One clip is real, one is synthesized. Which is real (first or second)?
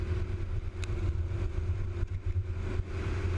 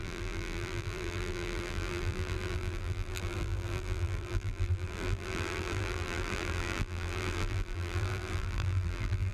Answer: first